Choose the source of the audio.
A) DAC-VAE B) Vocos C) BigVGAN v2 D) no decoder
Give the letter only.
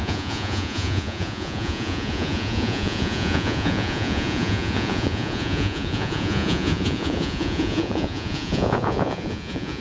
B